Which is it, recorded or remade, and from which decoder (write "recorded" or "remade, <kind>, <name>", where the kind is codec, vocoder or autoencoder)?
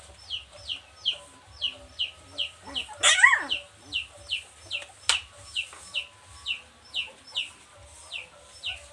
recorded